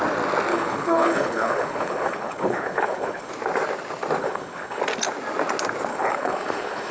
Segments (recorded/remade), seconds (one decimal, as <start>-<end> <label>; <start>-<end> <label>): 0.0-0.5 recorded; 0.5-3.3 remade; 3.3-4.2 recorded; 4.2-4.8 remade; 4.8-5.9 recorded; 5.9-6.9 remade